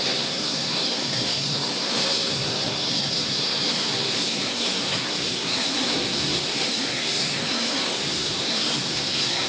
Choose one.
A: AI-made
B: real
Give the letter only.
A